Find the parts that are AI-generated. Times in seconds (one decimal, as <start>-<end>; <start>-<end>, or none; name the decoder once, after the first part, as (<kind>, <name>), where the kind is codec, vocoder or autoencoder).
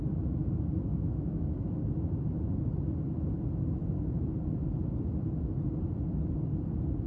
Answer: 0.9-1.7 (autoencoder, DAC-VAE)